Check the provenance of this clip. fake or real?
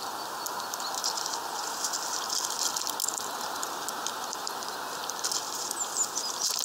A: real